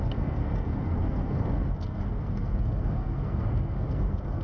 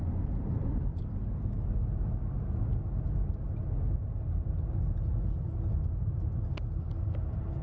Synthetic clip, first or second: first